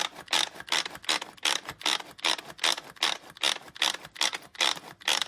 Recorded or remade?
recorded